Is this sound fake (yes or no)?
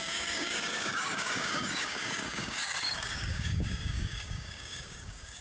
yes